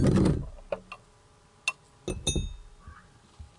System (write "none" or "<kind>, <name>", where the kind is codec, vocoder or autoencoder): none